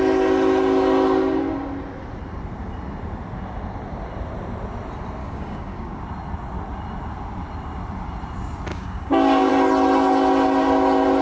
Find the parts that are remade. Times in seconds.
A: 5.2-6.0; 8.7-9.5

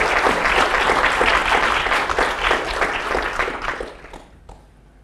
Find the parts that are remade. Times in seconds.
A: none

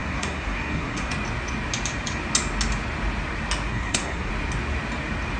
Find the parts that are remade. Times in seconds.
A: 0.0-1.1; 3.7-4.3

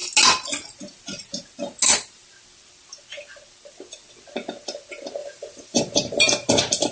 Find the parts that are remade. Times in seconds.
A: 5.2-6.5

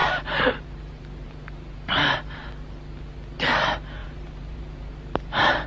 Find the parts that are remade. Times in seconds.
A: 0.0-2.5; 4.0-5.7